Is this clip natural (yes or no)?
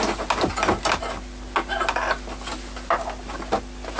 yes